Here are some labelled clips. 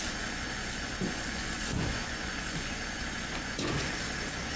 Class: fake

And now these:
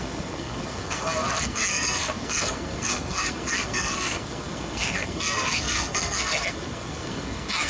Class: fake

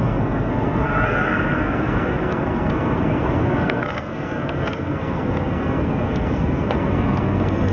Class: fake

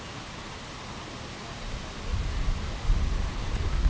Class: real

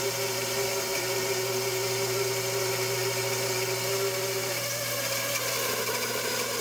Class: real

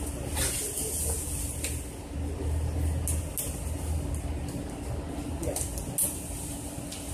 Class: real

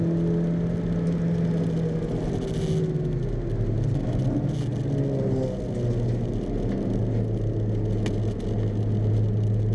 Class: real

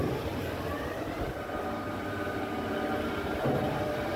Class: fake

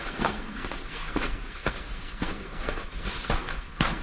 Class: fake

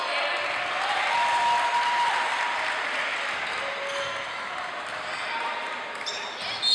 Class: real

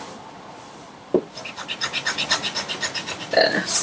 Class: real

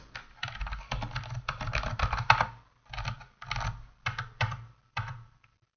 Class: real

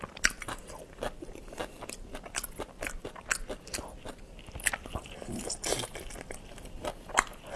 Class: real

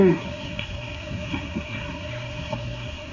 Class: fake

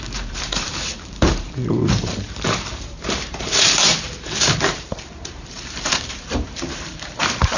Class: fake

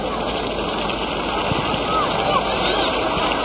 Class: real